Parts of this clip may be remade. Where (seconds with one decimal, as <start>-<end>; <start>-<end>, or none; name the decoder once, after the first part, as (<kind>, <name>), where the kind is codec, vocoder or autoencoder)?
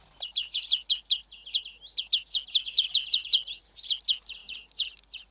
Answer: none